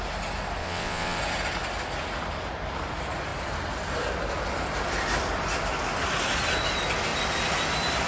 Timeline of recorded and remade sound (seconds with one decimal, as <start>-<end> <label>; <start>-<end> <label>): 0.0-0.6 recorded; 0.6-1.2 remade; 1.2-8.1 recorded